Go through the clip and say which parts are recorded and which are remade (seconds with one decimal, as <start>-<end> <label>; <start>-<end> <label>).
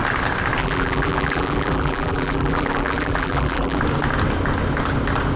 0.0-0.6 recorded; 0.6-3.8 remade; 3.8-5.4 recorded